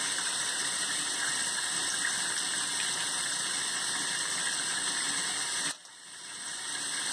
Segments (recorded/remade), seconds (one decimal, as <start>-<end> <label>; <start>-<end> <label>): 0.0-7.1 recorded